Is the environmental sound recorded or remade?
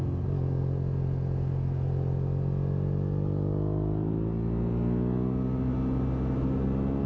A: recorded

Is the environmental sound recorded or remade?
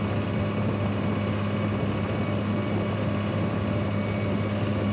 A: recorded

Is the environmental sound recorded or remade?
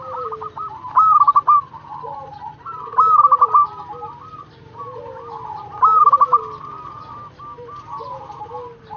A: recorded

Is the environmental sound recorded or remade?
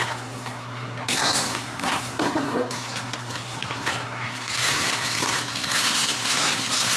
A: remade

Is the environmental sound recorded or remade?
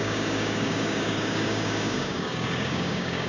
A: remade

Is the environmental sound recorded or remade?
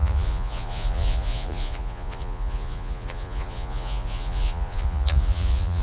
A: remade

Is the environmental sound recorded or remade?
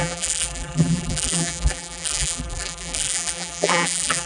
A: remade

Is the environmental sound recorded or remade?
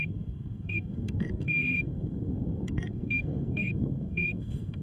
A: remade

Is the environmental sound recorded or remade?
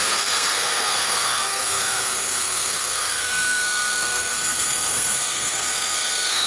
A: remade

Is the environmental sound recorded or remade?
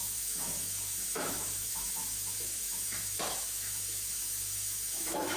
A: remade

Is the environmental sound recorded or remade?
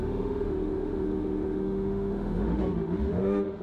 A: remade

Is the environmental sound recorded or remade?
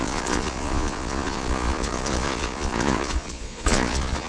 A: remade